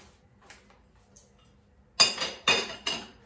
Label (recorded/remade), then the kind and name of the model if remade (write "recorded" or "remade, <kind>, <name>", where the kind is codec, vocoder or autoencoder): recorded